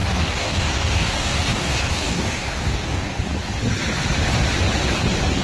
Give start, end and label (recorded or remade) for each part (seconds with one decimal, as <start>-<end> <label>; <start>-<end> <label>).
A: 0.0-3.2 remade; 3.2-5.4 recorded